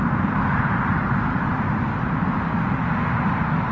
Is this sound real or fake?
real